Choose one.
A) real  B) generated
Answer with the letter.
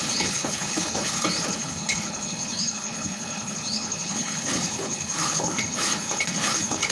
B